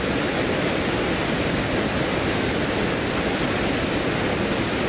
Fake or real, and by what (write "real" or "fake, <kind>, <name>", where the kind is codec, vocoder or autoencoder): real